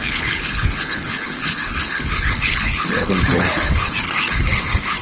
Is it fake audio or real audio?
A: fake